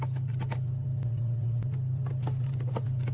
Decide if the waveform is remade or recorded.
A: recorded